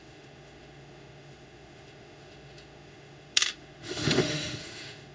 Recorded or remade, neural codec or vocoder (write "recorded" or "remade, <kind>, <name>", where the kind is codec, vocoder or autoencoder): remade, autoencoder, DAC-VAE